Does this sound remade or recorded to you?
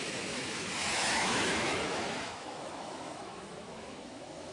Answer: remade